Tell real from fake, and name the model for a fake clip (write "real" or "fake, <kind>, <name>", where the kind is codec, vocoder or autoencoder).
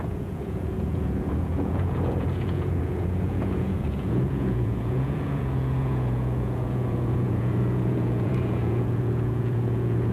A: fake, vocoder, Vocos